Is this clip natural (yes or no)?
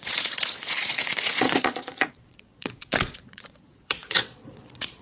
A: no